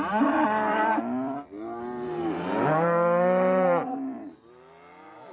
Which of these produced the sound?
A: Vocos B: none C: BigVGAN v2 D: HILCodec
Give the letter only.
C